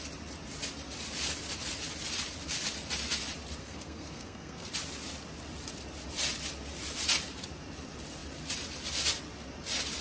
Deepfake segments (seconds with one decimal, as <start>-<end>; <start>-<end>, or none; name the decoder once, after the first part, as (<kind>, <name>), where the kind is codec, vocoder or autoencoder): 3.6-4.7 (codec, SNAC)